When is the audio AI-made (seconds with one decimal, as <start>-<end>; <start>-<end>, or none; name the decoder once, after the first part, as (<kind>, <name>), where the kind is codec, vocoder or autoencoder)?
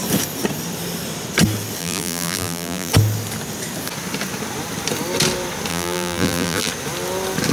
1.8-2.9 (vocoder, BigVGAN v2); 5.7-6.7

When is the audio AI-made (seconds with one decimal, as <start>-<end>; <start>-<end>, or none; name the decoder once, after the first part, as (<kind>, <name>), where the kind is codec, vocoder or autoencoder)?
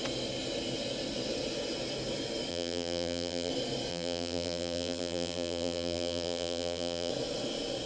2.5-3.5 (vocoder, BigVGAN v2); 3.9-7.1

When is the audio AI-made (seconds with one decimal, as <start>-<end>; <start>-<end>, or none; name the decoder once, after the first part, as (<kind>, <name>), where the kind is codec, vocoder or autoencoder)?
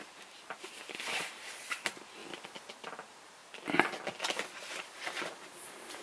0.0-2.2 (vocoder, BigVGAN v2); 2.7-3.4; 4.6-6.0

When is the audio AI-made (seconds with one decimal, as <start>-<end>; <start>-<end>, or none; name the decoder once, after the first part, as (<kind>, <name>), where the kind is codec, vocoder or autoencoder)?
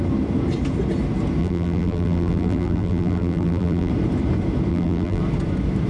1.4-3.9 (vocoder, BigVGAN v2); 4.7-5.2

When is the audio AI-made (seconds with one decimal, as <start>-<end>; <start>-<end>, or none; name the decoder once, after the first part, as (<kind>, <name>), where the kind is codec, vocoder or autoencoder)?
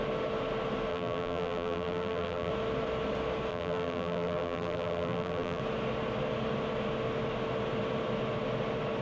0.9-2.5 (vocoder, BigVGAN v2); 3.5-5.6